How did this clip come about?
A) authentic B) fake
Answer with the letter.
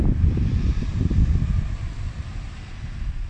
A